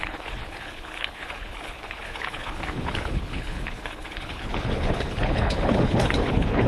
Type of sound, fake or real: fake